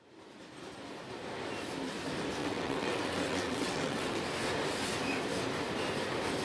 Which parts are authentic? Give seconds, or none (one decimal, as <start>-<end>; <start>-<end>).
0.0-2.4; 4.2-6.4